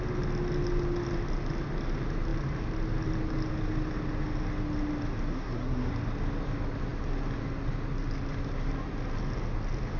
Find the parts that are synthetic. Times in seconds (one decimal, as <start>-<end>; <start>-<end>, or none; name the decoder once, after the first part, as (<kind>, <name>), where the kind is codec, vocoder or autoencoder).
5.3-5.9 (codec, SNAC)